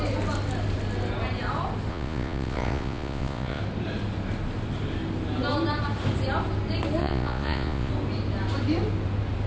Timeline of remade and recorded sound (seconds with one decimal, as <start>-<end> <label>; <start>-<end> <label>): 0.0-1.9 recorded; 1.9-3.6 remade; 3.6-7.0 recorded; 7.0-7.9 remade; 7.9-9.5 recorded